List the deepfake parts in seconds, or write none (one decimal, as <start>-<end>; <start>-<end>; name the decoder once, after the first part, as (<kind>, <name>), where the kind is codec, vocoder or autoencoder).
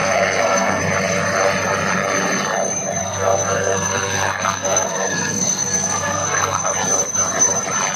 0.0-0.8 (codec, SNAC); 3.0-6.7